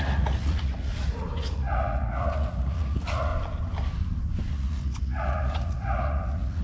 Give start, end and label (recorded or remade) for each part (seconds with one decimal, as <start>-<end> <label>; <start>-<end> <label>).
0.0-3.3 remade; 3.3-4.5 recorded; 4.5-6.6 remade